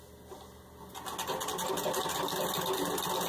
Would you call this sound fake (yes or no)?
no